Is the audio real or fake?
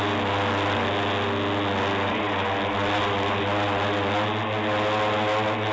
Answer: real